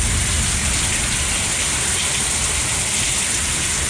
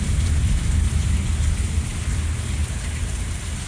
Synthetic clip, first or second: first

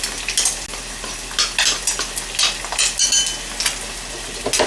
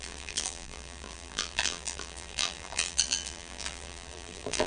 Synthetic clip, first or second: second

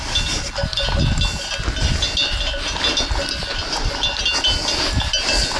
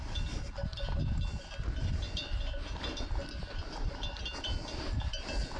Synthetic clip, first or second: second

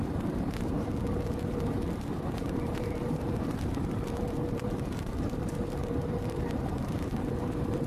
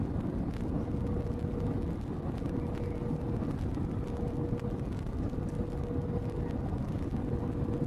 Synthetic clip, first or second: first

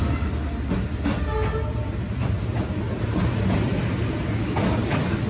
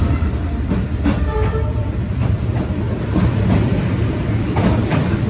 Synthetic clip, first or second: second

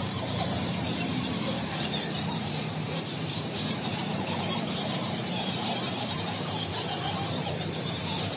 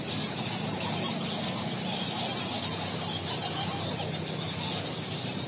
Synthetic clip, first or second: first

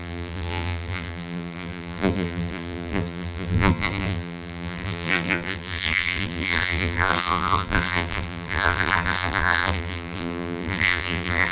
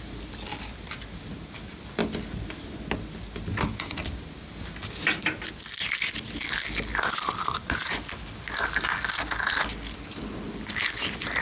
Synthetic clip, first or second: first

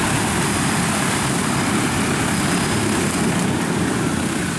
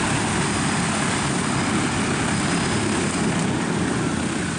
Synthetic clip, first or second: first